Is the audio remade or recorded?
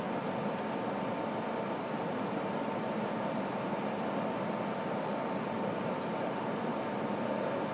recorded